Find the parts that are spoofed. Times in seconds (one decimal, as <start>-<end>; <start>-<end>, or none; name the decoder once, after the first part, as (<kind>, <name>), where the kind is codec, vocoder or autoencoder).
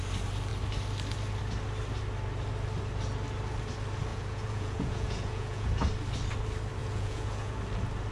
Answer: 4.1-5.8 (vocoder, Vocos); 6.8-7.6